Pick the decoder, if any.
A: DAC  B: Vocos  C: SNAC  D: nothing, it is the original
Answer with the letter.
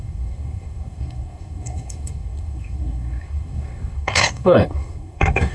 C